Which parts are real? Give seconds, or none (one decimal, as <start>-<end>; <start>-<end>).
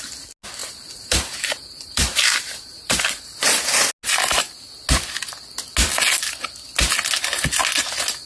0.0-0.6; 3.9-8.3